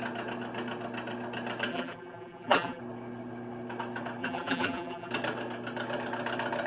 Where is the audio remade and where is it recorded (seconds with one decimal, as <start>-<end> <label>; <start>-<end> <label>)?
0.0-1.7 recorded; 1.7-2.8 remade; 2.8-4.2 recorded; 4.2-5.1 remade; 5.1-6.7 recorded